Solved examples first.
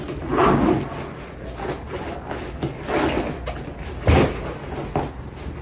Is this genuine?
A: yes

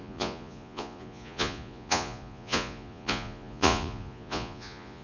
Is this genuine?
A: no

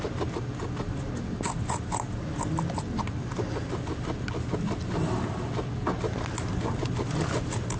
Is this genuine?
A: yes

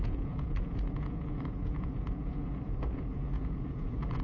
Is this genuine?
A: no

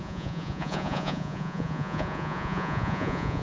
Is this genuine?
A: no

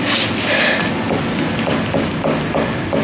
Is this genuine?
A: yes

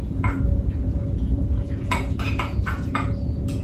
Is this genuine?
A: no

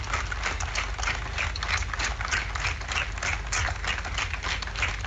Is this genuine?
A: yes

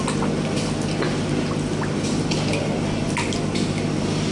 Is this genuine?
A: yes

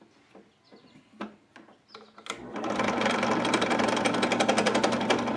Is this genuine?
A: yes